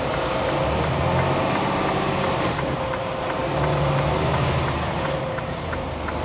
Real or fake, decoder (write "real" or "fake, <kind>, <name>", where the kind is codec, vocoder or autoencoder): real